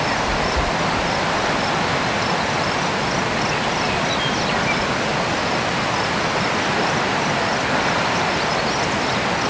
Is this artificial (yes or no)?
no